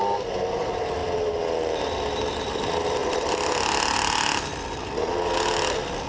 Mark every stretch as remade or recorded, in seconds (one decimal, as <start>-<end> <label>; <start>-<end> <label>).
0.0-6.1 recorded